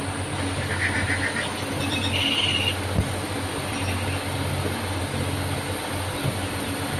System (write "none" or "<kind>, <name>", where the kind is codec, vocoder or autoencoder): none